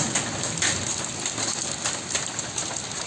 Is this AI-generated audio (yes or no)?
no